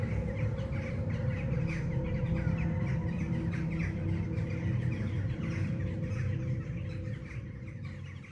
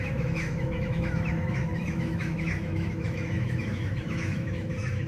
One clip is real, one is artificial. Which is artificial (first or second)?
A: second